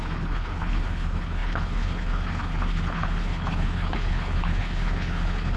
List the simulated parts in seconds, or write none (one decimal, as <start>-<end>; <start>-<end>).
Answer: 0.0-5.6